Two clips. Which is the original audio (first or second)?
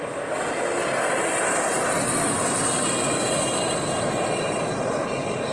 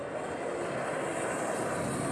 first